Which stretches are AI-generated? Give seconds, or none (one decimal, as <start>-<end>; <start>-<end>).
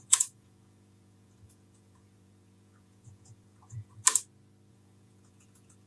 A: 0.0-4.0; 4.7-5.9